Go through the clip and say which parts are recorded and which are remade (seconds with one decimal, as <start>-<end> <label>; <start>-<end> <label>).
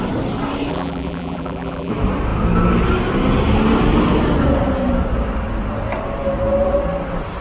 0.0-0.7 recorded; 0.7-1.9 remade; 1.9-7.4 recorded